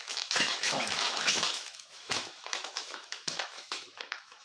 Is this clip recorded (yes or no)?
no